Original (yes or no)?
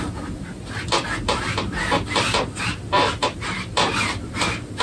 yes